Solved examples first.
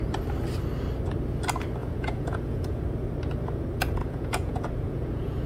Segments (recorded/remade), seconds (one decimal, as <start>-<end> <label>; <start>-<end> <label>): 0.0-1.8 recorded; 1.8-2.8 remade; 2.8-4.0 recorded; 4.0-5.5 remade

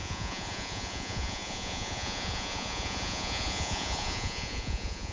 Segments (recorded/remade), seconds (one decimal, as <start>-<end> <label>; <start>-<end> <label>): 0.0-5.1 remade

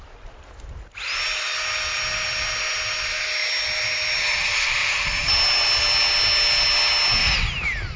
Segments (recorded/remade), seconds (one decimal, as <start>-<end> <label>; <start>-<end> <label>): 0.0-8.0 recorded

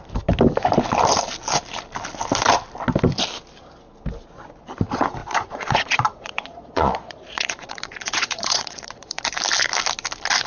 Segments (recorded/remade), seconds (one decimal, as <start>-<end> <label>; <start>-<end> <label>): 0.0-5.2 recorded; 5.2-9.2 remade; 9.2-10.5 recorded

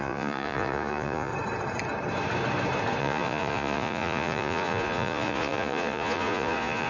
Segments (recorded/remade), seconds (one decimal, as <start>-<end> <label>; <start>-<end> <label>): 0.0-1.3 remade; 1.3-3.0 recorded; 3.0-6.9 remade

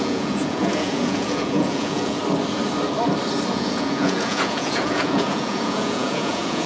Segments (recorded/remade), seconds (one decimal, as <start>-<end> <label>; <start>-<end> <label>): 0.0-2.2 remade; 2.2-3.5 recorded; 3.5-6.7 remade